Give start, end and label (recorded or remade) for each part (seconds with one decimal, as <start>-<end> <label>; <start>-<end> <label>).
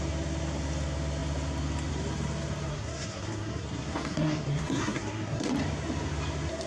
0.0-2.7 recorded; 2.7-5.5 remade; 5.5-6.7 recorded